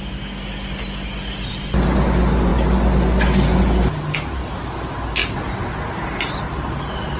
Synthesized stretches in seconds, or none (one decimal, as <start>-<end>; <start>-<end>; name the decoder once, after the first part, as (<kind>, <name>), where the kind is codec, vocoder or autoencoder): none